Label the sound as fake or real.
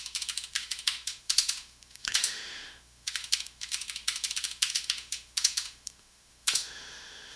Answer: fake